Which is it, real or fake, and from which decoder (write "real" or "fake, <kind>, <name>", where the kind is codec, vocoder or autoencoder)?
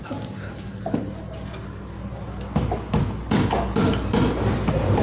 real